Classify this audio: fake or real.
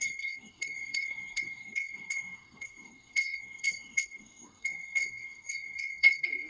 fake